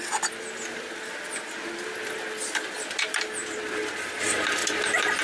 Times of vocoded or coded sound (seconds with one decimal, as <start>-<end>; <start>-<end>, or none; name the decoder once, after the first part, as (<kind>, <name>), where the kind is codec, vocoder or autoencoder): none